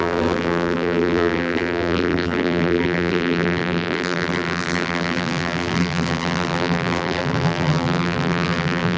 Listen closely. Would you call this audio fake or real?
fake